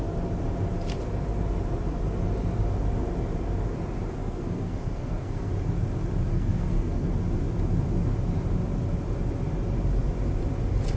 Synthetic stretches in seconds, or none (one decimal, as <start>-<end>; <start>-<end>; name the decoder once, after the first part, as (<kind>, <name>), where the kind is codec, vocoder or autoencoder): 4.2-5.5 (codec, SNAC); 6.3-7.1